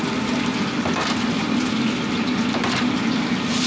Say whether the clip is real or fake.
real